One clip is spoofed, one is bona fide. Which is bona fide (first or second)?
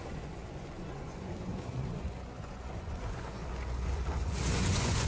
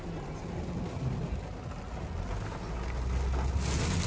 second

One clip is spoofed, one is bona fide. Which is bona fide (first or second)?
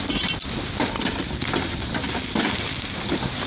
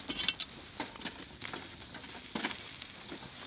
second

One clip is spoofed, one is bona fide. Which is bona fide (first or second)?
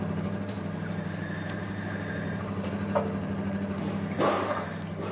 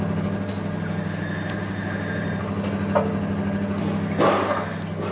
second